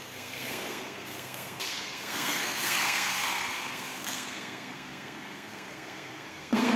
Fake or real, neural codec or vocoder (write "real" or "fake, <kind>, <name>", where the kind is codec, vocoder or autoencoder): fake, codec, SNAC